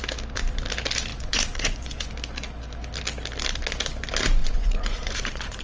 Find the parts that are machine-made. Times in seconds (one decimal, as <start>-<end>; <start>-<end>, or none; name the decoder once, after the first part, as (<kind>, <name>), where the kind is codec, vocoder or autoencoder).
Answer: 1.1-2.1 (vocoder, Vocos); 4.4-5.6